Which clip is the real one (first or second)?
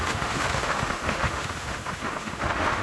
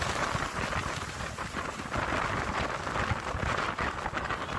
second